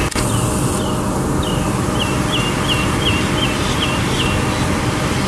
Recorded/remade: recorded